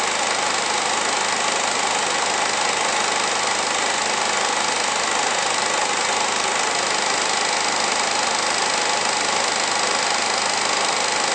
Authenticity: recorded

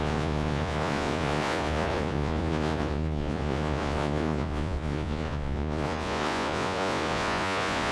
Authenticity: remade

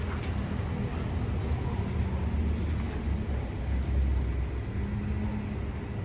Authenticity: recorded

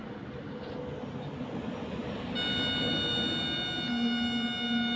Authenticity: recorded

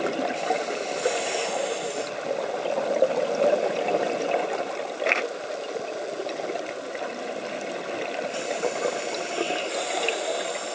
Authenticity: recorded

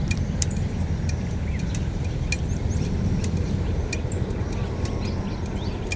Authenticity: recorded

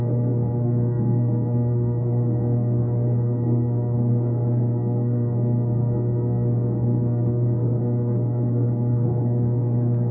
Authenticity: remade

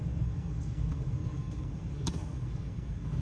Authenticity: remade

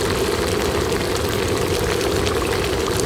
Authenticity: recorded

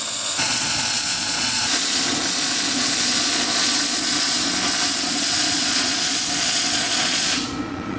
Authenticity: remade